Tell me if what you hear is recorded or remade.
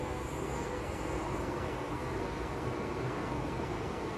remade